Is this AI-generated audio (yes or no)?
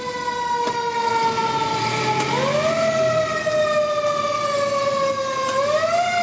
no